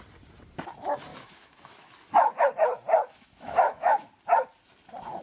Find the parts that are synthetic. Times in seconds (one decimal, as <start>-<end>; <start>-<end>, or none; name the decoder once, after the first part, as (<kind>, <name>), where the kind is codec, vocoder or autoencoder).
1.1-2.5 (autoencoder, DAC-VAE); 2.9-4.1